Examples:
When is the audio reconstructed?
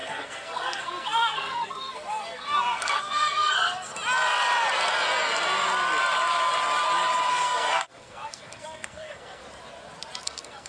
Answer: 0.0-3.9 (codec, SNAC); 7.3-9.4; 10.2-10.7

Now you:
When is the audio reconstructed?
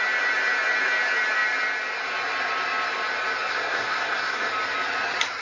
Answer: 3.5-4.5 (codec, SNAC)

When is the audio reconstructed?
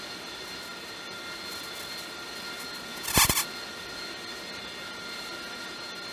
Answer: 2.9-3.4 (vocoder, Vocos)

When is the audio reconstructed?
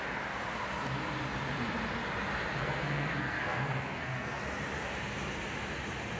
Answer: 2.5-4.4 (codec, SNAC)